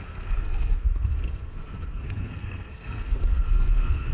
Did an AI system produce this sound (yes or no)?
yes